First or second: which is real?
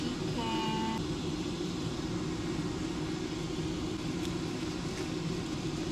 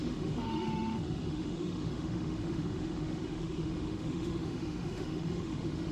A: first